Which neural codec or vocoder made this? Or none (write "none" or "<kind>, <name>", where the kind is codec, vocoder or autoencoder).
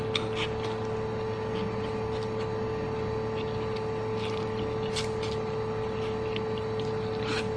none